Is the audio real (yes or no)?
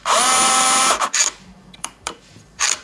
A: no